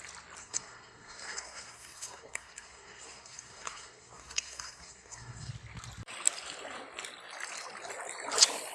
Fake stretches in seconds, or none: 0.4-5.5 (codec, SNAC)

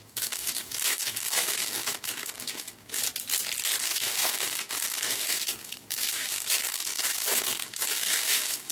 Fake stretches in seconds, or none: 0.0-3.0 (codec, DAC); 3.8-8.7